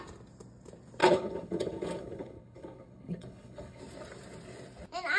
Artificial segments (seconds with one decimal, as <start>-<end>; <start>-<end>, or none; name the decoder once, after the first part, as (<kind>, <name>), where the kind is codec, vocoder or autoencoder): 1.0-3.8 (codec, HILCodec)